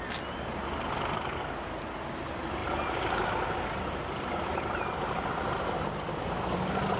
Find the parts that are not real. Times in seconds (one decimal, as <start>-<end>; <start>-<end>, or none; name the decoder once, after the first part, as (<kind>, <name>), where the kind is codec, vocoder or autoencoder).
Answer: none